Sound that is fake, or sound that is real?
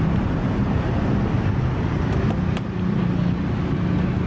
real